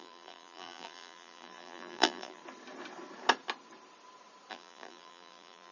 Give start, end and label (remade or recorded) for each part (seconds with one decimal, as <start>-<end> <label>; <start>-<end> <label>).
0.0-2.4 remade; 2.4-4.5 recorded; 4.5-5.7 remade